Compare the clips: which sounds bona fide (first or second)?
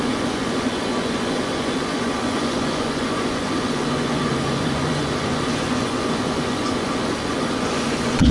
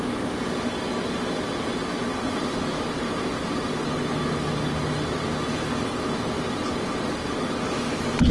second